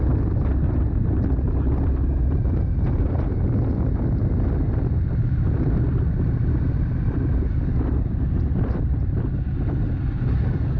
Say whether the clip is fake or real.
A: real